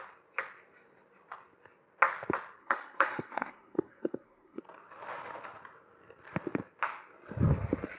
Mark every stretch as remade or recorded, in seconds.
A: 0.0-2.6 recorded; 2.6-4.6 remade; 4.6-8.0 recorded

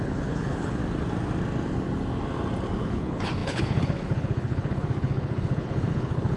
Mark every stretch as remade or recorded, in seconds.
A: 0.0-0.8 remade; 0.8-2.8 recorded; 2.8-6.4 remade

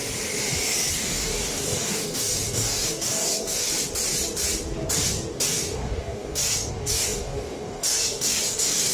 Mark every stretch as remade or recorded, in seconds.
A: 0.0-0.9 recorded; 0.9-3.7 remade; 3.7-5.3 recorded; 5.3-8.9 remade